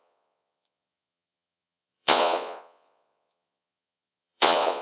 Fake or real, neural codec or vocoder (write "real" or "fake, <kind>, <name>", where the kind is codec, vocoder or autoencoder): fake, vocoder, Vocos